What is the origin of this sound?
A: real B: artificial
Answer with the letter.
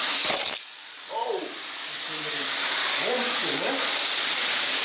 A